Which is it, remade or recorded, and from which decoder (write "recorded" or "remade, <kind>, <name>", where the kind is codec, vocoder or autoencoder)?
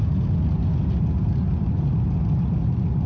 recorded